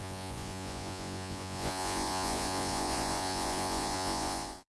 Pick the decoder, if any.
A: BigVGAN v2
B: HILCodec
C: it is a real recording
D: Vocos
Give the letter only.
D